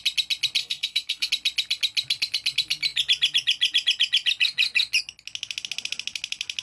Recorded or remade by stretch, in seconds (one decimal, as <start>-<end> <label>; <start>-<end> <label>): 0.0-0.6 recorded; 0.6-1.3 remade; 1.3-6.6 recorded